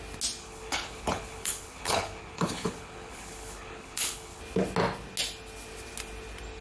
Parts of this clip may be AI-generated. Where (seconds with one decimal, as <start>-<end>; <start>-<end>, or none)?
0.4-4.4